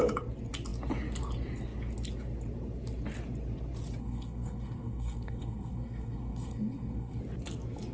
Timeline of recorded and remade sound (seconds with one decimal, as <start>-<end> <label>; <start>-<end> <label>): 0.0-4.0 recorded; 4.0-7.2 remade; 7.2-7.9 recorded